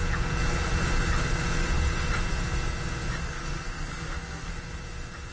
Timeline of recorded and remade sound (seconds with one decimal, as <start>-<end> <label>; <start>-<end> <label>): 0.0-3.2 recorded; 3.2-4.5 remade; 4.5-5.3 recorded

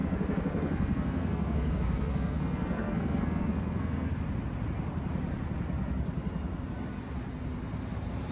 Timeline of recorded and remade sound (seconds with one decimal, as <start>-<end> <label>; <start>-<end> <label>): 0.0-4.1 remade; 4.1-8.3 recorded

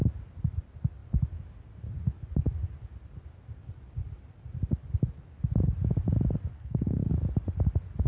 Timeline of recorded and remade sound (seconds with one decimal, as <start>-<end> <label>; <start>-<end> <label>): 0.0-6.5 recorded; 6.5-7.1 remade; 7.1-8.1 recorded

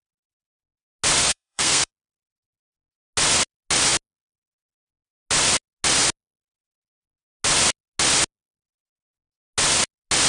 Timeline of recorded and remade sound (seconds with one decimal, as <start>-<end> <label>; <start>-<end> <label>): 0.0-1.2 recorded; 1.2-1.9 remade; 1.9-10.3 recorded

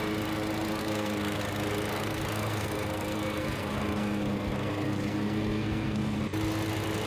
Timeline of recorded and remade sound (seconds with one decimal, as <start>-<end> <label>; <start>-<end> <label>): 0.0-0.8 recorded; 0.8-1.4 remade; 1.4-1.9 recorded; 1.9-6.2 remade; 6.2-7.1 recorded